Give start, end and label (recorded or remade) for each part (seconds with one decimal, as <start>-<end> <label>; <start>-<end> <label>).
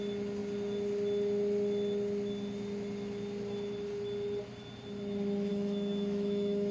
0.0-5.5 recorded; 5.5-6.7 remade